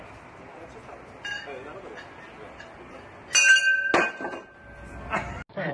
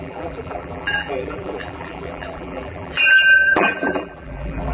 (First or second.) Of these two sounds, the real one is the first